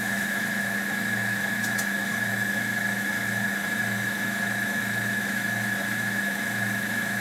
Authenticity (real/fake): fake